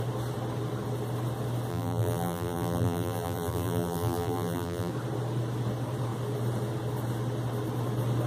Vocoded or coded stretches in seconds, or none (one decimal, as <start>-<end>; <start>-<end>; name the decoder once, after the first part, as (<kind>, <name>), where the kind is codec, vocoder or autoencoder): 1.7-4.9 (vocoder, BigVGAN v2)